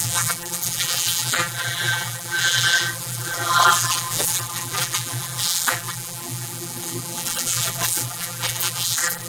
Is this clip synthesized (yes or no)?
yes